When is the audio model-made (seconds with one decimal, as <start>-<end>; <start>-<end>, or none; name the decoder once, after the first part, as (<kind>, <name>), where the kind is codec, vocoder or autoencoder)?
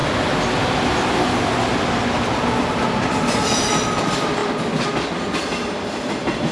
none